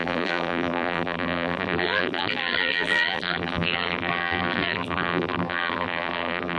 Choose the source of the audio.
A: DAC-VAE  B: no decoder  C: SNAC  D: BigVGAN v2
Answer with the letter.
D